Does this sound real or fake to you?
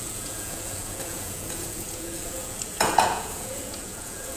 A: fake